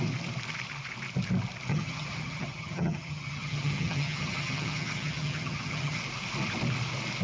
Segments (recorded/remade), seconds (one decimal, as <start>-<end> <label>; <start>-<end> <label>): 0.0-1.7 recorded; 1.7-6.0 remade; 6.0-7.2 recorded